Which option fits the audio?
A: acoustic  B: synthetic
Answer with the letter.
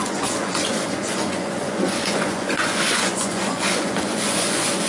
B